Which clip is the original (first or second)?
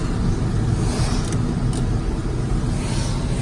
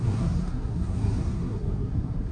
first